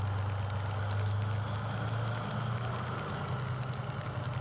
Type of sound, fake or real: real